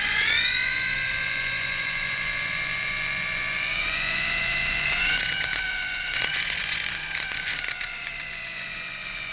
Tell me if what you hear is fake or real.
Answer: fake